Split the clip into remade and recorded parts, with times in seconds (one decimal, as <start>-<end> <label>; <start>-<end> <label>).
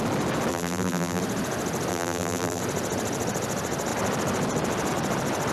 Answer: 0.0-0.5 recorded; 0.5-1.2 remade; 1.2-1.9 recorded; 1.9-2.6 remade; 2.6-5.5 recorded